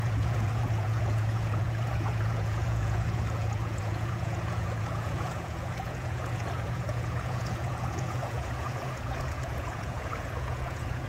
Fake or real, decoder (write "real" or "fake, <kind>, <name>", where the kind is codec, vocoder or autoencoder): fake, vocoder, Vocos